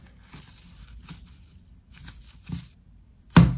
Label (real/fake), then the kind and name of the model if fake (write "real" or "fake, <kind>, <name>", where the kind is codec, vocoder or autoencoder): real